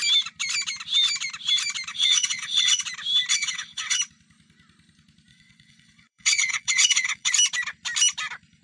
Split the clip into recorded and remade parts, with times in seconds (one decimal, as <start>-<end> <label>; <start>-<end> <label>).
0.0-1.9 recorded; 1.9-2.8 remade; 2.8-3.3 recorded; 3.3-4.0 remade; 4.0-5.3 recorded; 5.3-7.3 remade; 7.3-8.6 recorded